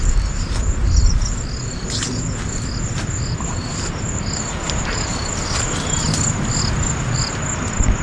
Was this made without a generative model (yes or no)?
yes